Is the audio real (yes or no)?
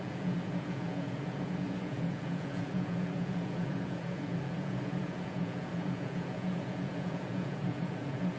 no